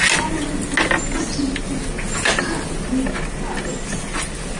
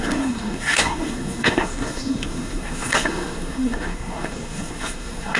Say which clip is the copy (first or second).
second